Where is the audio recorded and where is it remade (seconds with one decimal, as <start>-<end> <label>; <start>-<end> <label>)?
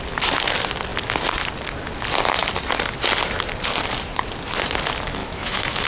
0.0-5.2 recorded; 5.2-5.9 remade